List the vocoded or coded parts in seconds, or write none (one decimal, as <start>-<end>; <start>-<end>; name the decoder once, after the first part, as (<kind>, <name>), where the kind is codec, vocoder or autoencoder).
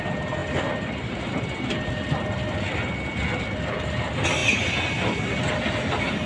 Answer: none